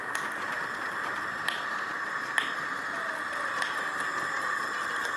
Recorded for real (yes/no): yes